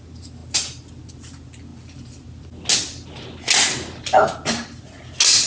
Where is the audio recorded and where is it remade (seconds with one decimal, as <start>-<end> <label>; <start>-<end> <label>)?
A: 0.0-5.5 recorded